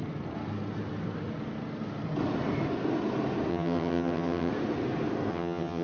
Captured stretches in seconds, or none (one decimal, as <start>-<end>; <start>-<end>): 0.0-3.5; 4.5-5.3